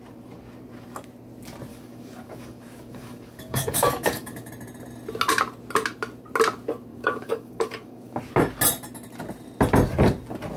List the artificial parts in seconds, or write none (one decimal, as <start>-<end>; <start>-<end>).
1.7-4.5; 6.9-8.2